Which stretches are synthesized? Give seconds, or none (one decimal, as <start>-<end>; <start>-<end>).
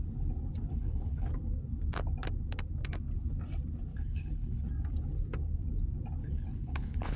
0.7-1.3; 3.9-4.7; 6.2-7.2